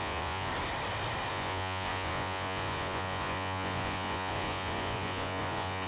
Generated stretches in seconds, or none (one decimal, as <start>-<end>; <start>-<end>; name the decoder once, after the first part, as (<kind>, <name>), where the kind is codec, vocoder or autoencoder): 0.0-0.5 (vocoder, Vocos); 1.3-5.9